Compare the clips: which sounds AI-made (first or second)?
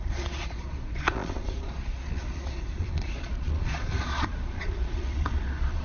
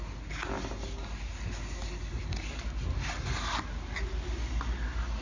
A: first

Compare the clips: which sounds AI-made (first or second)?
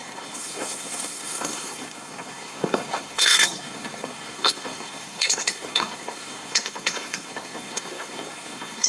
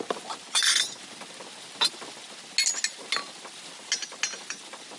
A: first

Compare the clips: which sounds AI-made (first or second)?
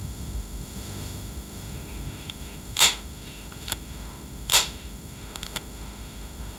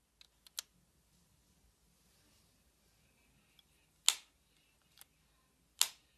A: first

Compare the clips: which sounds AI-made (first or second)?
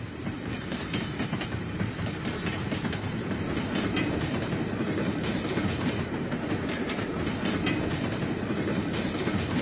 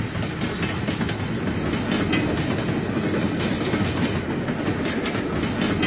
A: first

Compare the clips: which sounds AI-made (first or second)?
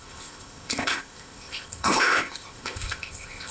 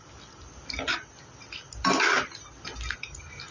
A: first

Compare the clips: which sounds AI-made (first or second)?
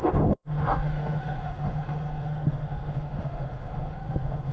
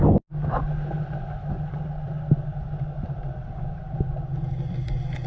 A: first